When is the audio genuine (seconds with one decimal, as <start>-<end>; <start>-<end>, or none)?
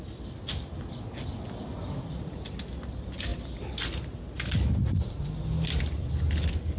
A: 0.0-4.8; 5.3-6.8